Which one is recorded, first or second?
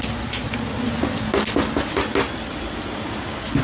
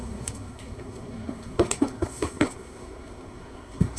first